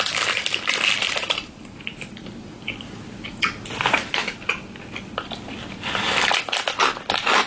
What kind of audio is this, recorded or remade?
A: recorded